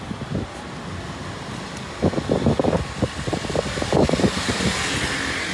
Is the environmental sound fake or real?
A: real